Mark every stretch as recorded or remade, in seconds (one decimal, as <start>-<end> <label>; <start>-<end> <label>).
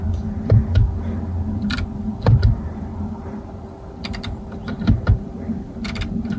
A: 0.0-2.2 recorded; 2.2-6.4 remade